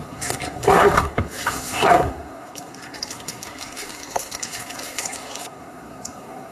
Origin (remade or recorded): remade